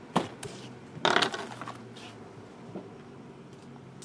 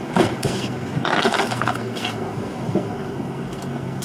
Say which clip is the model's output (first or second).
second